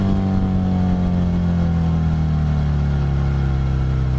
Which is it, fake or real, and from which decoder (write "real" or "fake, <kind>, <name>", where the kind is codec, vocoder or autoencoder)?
real